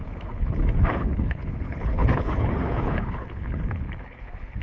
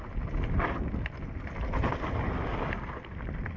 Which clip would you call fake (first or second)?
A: first